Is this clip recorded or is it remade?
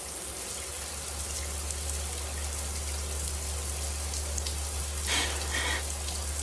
recorded